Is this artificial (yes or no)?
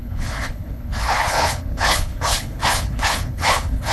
yes